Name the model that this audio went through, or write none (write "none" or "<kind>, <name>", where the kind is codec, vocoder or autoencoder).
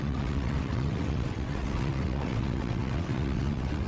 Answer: vocoder, WaveNeXt